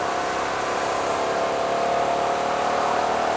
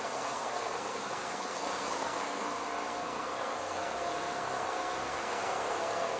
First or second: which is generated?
second